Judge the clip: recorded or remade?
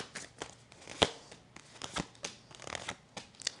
recorded